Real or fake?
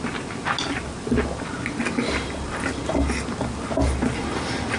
real